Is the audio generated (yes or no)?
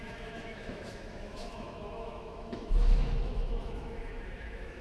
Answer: yes